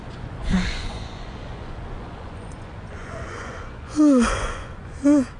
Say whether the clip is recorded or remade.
remade